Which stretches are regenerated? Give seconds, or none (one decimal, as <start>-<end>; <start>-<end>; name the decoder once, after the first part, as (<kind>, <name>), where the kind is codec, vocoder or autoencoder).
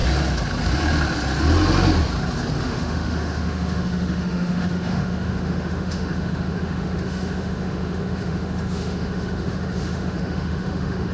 2.6-11.1 (autoencoder, DAC-VAE)